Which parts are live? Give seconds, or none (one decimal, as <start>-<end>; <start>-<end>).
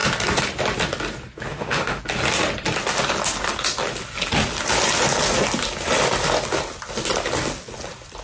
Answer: 0.0-1.5; 2.0-8.2